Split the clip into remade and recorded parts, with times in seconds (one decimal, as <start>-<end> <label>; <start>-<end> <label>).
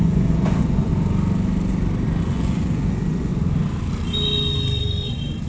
0.0-0.9 remade; 0.9-2.2 recorded; 2.2-3.3 remade; 3.3-5.5 recorded